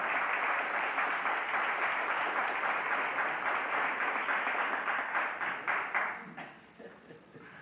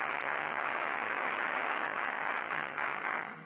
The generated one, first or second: second